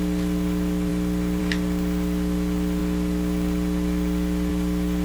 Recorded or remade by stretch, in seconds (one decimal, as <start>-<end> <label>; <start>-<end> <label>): 0.0-5.0 recorded